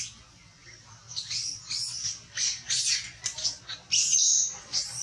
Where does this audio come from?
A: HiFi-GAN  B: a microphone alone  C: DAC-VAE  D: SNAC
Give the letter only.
B